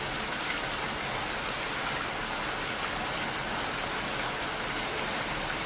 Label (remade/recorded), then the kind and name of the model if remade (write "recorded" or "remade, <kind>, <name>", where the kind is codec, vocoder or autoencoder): recorded